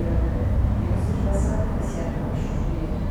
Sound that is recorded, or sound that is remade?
recorded